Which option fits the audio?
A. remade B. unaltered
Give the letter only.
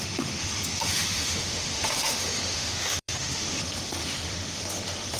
A